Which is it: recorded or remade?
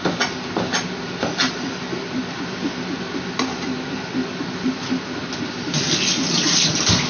recorded